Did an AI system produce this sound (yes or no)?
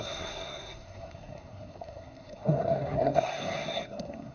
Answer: yes